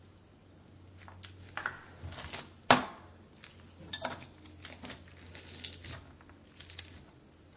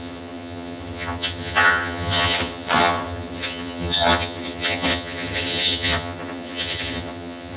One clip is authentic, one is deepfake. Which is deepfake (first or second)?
second